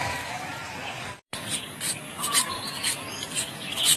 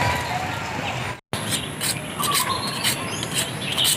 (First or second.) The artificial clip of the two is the first